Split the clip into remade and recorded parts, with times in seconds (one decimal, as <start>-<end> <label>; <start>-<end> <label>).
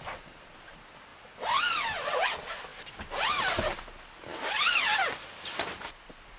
0.0-6.4 recorded